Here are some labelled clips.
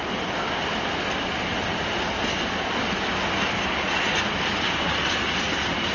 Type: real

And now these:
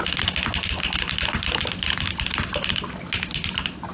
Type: real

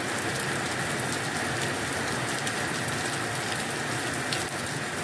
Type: real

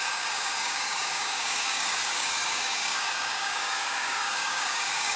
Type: fake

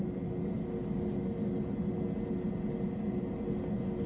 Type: real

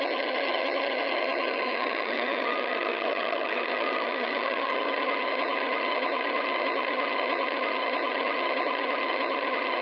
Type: fake